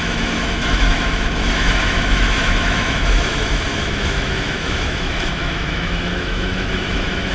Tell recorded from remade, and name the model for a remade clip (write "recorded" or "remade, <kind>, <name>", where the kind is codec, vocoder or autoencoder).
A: remade, autoencoder, DAC-VAE